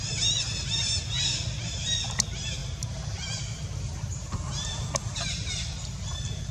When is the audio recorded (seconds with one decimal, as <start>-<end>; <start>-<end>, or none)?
0.0-2.6; 4.9-6.5